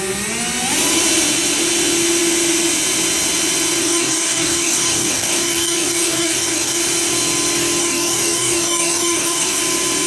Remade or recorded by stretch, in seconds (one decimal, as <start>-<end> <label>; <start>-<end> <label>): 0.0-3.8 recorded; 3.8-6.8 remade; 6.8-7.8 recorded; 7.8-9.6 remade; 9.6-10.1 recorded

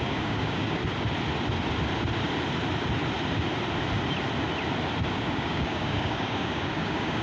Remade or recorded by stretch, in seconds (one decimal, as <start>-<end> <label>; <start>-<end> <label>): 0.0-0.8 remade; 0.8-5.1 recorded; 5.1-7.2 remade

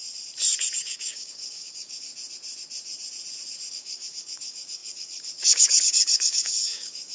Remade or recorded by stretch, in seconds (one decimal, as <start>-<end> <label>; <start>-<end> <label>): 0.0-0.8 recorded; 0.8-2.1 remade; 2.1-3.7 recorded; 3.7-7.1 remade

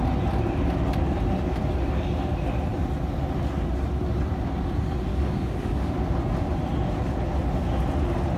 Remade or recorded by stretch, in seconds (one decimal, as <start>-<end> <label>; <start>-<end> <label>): 0.0-5.1 recorded; 5.1-5.9 remade; 5.9-8.4 recorded

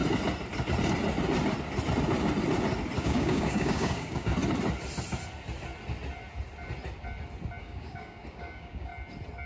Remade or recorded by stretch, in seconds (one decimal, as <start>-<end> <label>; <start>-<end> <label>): 0.0-3.0 recorded; 3.0-4.3 remade; 4.3-7.6 recorded; 7.6-8.9 remade; 8.9-9.5 recorded

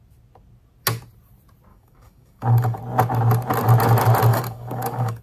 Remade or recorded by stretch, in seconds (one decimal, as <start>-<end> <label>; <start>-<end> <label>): 0.0-1.7 recorded; 1.7-2.8 remade; 2.8-4.3 recorded; 4.3-5.2 remade